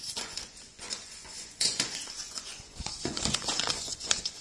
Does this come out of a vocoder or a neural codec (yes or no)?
yes